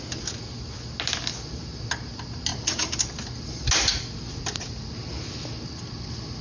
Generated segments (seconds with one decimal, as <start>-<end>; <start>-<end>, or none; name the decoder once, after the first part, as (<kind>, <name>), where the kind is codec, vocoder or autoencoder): none